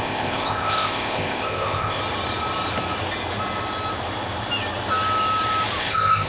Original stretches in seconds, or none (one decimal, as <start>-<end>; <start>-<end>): 2.0-5.8

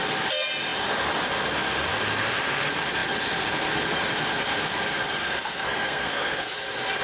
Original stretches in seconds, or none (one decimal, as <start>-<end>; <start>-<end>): 0.0-5.2; 6.5-7.0

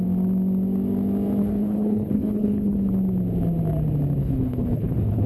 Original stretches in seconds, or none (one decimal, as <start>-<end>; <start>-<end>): 0.0-1.4; 2.9-4.2

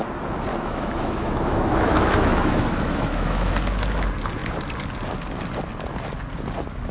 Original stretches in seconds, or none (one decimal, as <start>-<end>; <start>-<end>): 0.0-0.5; 3.5-6.9

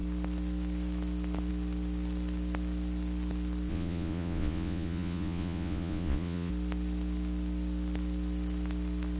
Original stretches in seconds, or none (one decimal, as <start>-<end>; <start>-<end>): 0.0-3.7; 6.5-9.2

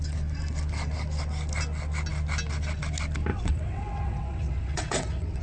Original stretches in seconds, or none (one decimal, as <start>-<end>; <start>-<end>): 0.0-3.3

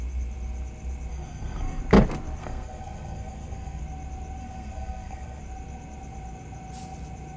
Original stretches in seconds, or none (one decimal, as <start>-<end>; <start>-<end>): 0.0-1.1; 1.8-2.4; 3.8-4.4; 5.4-7.4